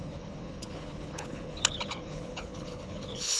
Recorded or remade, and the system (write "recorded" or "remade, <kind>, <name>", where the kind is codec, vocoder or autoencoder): remade, codec, HILCodec